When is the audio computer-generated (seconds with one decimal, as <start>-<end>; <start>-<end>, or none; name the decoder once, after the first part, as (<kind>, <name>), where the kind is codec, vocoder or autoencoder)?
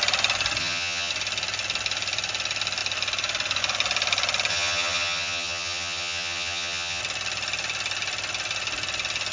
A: 0.6-1.1 (vocoder, HiFi-GAN); 4.5-7.0